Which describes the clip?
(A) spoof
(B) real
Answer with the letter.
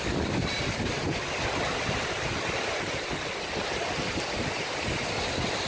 B